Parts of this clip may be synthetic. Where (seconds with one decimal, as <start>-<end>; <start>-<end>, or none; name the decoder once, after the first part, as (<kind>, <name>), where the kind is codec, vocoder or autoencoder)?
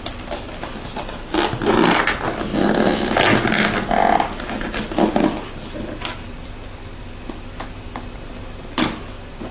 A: none